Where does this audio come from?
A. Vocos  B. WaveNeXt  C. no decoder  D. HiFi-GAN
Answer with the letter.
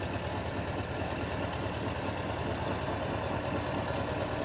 C